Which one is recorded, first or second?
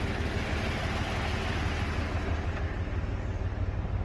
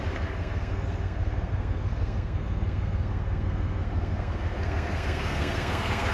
first